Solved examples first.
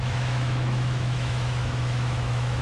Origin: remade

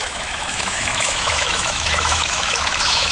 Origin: remade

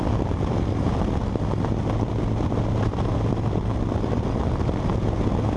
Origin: recorded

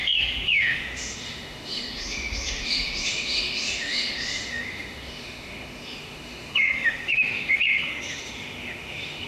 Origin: remade